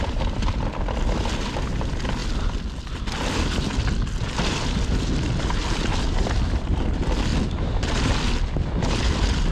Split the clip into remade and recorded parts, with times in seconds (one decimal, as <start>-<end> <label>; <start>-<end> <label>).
0.0-9.5 recorded